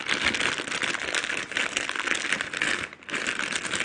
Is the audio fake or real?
real